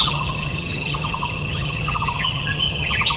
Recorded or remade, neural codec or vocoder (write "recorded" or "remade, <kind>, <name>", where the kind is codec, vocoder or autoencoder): remade, vocoder, HiFi-GAN